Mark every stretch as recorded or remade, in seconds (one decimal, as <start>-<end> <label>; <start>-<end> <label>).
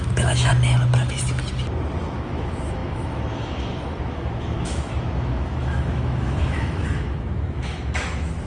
0.0-0.5 remade; 0.5-2.0 recorded; 2.0-8.5 remade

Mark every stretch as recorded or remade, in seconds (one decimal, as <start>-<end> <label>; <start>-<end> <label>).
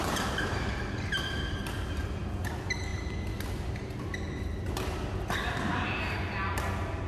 0.0-7.1 recorded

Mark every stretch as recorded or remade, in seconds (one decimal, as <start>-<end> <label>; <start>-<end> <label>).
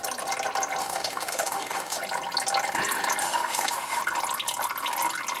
0.0-0.8 recorded; 0.8-2.0 remade; 2.0-3.2 recorded; 3.2-4.0 remade; 4.0-5.4 recorded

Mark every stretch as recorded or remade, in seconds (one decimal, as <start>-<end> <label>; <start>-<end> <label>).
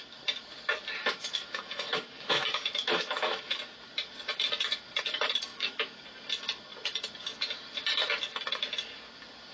0.0-1.0 recorded; 1.0-3.4 remade; 3.4-5.5 recorded; 5.5-6.0 remade; 6.0-9.5 recorded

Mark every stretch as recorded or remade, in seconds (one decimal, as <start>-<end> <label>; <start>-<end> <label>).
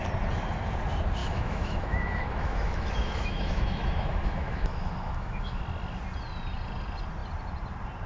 0.0-1.2 recorded; 1.2-5.6 remade; 5.6-8.1 recorded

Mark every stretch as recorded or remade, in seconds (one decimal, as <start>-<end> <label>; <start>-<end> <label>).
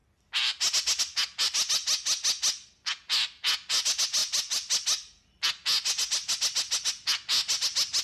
0.0-8.0 recorded